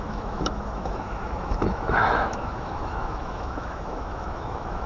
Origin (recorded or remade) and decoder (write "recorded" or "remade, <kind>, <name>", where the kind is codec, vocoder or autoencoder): remade, autoencoder, DAC-VAE